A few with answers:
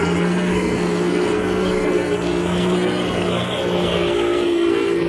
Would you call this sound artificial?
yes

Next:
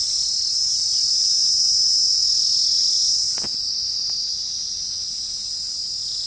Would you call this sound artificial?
no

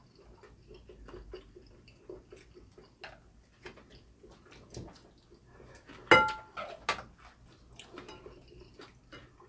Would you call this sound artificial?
no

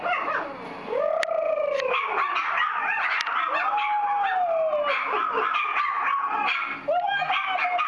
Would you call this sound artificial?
no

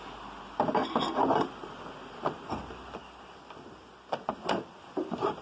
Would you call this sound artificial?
no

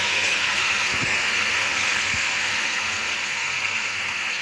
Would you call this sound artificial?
yes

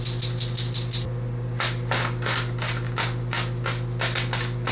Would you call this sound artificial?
no